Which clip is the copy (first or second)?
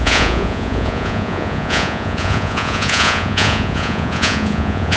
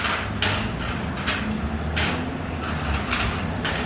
first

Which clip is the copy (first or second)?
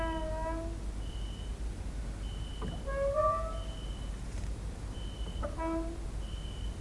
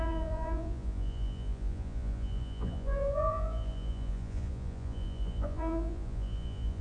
second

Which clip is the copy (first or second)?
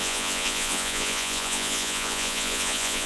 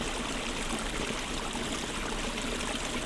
first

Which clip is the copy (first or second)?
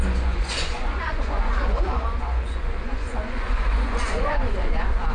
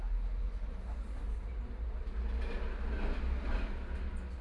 first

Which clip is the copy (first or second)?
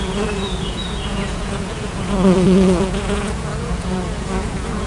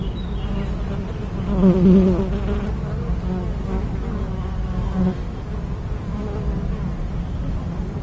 first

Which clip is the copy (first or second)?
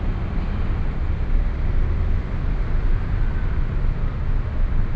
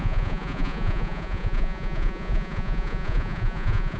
second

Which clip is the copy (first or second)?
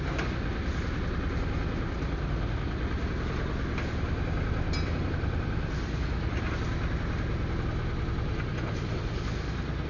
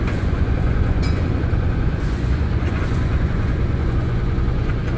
second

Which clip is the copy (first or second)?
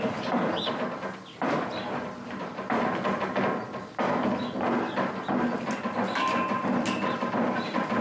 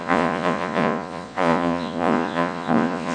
second